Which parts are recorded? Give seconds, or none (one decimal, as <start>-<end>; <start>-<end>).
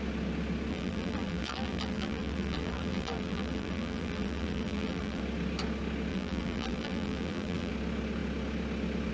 0.0-0.7; 5.2-6.1; 7.7-9.1